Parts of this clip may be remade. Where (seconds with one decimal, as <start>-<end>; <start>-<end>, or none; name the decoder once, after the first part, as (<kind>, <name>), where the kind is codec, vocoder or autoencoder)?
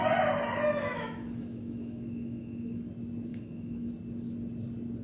0.9-2.9 (autoencoder, DAC-VAE); 3.3-3.9